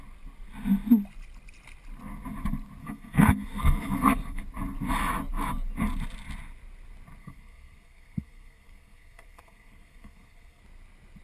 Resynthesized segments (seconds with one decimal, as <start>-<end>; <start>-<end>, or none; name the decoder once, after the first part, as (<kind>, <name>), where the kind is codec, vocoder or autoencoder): 2.8-4.4 (codec, SNAC); 7.2-10.6